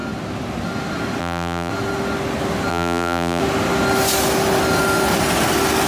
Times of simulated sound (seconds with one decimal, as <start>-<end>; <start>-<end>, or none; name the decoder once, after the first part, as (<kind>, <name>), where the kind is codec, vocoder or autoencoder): 1.2-1.7 (vocoder, BigVGAN v2); 2.7-3.4